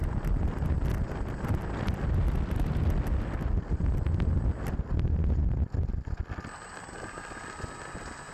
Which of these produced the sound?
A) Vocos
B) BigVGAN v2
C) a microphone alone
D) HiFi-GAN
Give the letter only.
C